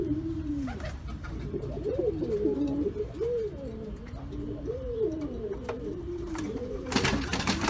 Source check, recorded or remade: remade